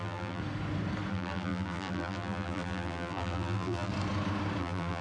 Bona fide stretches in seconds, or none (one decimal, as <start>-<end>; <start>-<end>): 0.4-1.1; 3.9-4.6